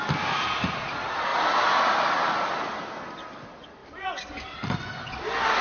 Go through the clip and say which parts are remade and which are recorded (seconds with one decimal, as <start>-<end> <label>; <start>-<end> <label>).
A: 0.0-5.6 recorded